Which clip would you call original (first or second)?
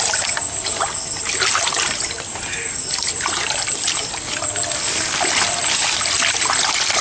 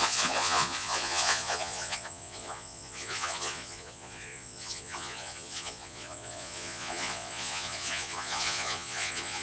first